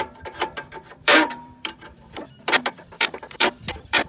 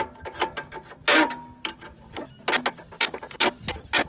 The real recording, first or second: second